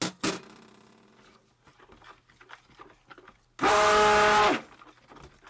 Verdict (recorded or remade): recorded